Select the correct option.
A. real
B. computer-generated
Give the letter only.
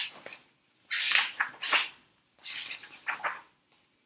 A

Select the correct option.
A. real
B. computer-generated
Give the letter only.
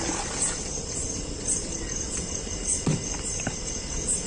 B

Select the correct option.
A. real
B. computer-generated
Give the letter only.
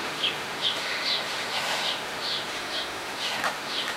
B